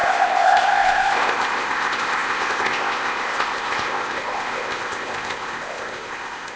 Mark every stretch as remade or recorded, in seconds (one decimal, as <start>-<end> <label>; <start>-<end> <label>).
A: 0.0-6.6 remade